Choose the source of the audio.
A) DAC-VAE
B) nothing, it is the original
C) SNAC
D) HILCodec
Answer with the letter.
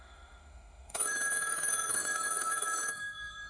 A